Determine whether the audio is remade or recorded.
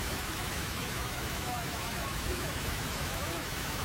remade